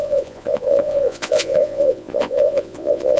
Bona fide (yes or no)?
no